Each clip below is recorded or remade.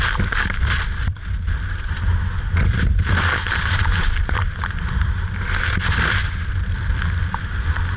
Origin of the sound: remade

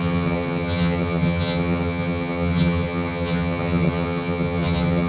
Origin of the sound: remade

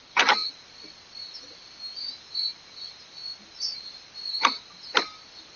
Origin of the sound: recorded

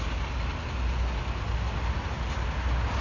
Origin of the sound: recorded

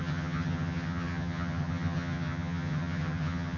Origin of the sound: remade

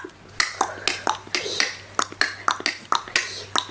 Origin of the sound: recorded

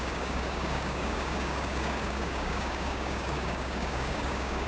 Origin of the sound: remade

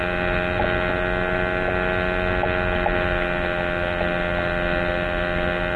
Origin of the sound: recorded